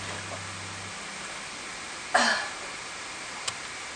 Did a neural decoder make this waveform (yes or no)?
no